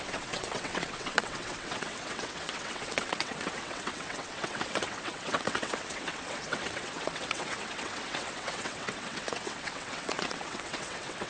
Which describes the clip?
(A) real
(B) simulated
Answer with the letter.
B